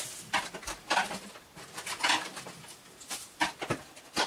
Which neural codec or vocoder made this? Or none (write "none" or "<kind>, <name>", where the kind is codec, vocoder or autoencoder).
none